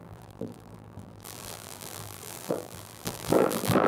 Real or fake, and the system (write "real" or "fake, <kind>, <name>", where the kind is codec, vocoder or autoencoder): fake, vocoder, BigVGAN v2